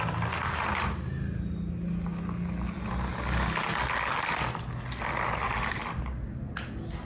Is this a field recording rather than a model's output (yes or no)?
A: yes